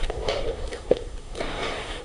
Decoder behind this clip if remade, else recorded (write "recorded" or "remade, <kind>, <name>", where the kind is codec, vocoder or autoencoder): remade, codec, SNAC